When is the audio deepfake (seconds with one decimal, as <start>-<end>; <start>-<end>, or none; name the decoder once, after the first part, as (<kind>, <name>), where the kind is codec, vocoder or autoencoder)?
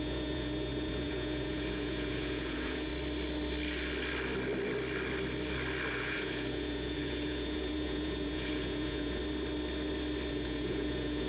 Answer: 0.0-2.9 (vocoder, Vocos); 5.9-9.2; 10.3-11.3